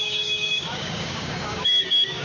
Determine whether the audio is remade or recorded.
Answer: remade